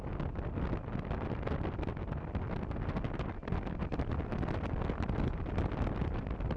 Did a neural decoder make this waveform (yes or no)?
no